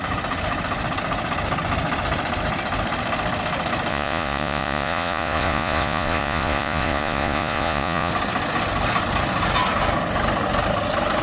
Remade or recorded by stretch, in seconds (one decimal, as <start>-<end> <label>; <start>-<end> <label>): 0.0-3.9 recorded; 3.9-8.1 remade; 8.1-11.2 recorded